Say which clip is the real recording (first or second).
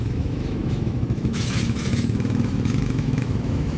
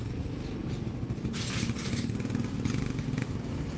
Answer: second